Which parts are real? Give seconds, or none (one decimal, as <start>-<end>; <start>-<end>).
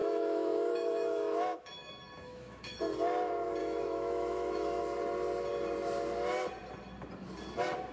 2.8-3.6; 4.8-7.9